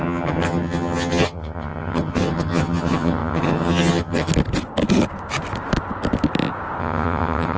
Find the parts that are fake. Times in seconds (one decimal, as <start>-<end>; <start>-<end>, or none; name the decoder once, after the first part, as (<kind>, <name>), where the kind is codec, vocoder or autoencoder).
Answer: 0.0-4.3 (vocoder, HiFi-GAN); 6.8-7.6